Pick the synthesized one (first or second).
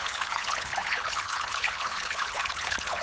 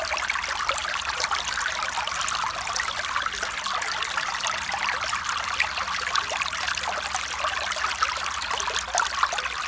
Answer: first